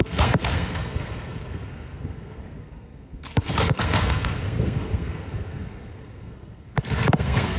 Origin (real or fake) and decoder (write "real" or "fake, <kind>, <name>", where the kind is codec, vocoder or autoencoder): fake, codec, SNAC